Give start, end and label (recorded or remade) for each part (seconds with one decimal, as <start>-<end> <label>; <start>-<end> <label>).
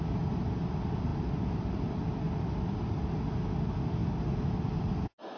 0.0-5.4 recorded